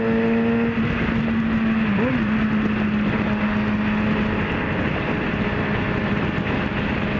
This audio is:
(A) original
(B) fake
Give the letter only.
A